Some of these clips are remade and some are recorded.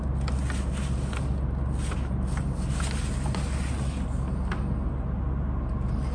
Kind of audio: recorded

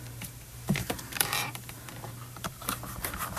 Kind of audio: remade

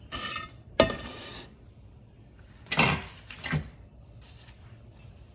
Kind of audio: remade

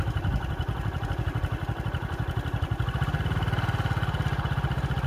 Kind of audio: recorded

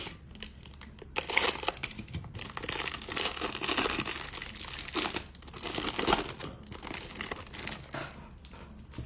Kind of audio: recorded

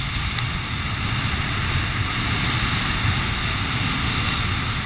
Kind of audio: recorded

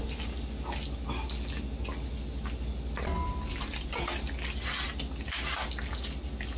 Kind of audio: recorded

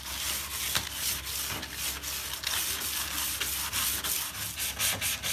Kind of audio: recorded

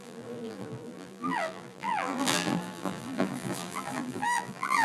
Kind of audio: remade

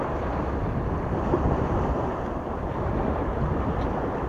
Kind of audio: remade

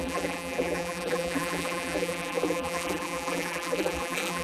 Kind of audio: remade